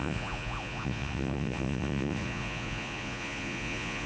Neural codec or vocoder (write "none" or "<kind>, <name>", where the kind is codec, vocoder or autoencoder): vocoder, Vocos